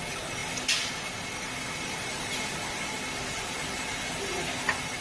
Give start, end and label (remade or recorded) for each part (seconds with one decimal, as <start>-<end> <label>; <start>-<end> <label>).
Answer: 0.0-5.0 recorded